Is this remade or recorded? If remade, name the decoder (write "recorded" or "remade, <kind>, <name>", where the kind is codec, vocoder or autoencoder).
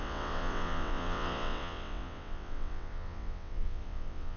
remade, vocoder, WaveNeXt